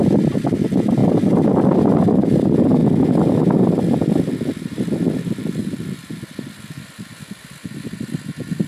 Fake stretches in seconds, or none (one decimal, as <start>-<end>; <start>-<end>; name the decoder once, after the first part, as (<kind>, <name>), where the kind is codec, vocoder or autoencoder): 0.0-1.0 (vocoder, BigVGAN v2); 2.0-2.8; 7.7-8.7

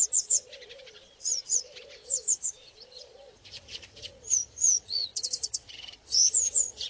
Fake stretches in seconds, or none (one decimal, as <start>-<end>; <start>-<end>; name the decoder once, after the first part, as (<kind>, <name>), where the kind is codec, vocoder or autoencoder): 0.0-6.9 (vocoder, Vocos)